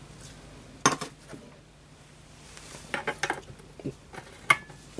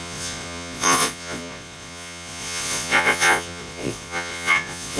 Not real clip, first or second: second